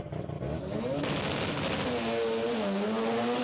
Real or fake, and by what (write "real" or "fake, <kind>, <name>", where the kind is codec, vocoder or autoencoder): real